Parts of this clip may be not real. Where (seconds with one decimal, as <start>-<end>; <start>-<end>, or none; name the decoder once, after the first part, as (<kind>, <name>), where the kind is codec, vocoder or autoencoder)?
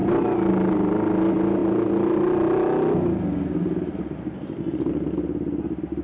none